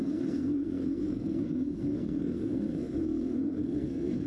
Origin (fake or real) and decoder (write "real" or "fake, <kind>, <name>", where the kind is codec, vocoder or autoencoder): fake, codec, SNAC